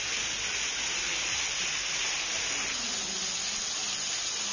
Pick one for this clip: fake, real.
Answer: real